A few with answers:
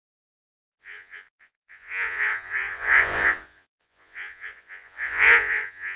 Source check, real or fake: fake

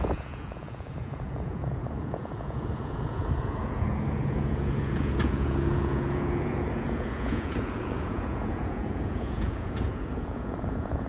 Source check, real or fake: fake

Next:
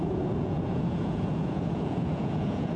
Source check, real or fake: fake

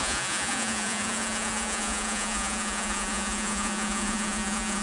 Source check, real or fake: fake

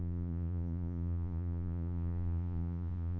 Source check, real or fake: fake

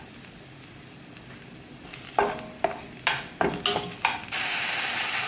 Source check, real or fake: real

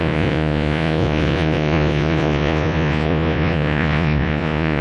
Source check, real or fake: fake